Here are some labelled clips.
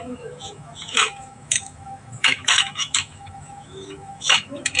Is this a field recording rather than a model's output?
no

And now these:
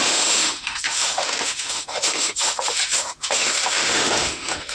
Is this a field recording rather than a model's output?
no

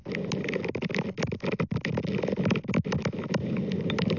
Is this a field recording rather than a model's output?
yes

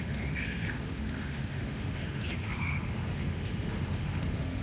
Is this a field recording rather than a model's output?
no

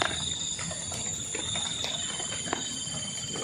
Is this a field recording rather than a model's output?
yes